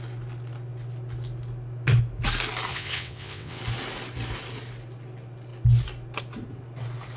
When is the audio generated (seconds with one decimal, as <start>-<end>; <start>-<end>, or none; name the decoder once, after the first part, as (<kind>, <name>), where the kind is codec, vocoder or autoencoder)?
2.7-3.6 (vocoder, WaveNeXt)